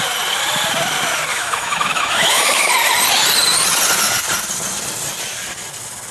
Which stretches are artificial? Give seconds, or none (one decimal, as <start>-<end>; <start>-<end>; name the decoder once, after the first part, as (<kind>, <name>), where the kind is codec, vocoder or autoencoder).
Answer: 1.3-2.7 (autoencoder, DAC-VAE)